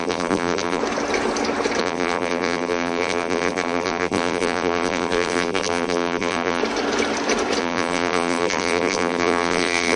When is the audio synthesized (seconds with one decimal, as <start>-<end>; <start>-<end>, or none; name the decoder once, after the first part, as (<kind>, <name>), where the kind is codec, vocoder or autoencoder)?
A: 0.0-0.8 (vocoder, BigVGAN v2); 1.8-6.6; 7.6-10.0